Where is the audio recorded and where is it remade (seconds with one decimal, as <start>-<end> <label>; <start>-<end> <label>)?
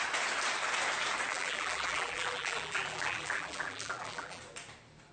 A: 0.0-1.3 recorded; 1.3-4.4 remade; 4.4-5.1 recorded